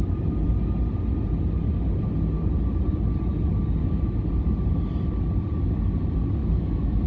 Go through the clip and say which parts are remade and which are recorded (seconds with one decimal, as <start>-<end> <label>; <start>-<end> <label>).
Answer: 0.0-3.8 recorded; 3.8-4.3 remade; 4.3-6.4 recorded; 6.4-7.1 remade